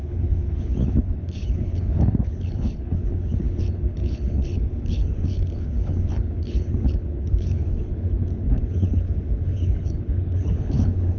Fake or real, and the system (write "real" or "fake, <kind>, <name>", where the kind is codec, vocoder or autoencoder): fake, codec, HILCodec